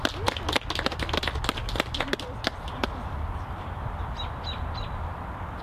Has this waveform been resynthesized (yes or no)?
no